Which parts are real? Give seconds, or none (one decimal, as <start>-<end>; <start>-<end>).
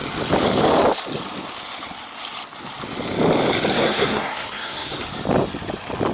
0.0-3.8; 5.0-6.1